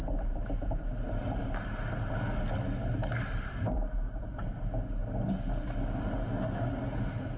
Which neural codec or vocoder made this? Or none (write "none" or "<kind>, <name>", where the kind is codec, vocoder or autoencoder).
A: none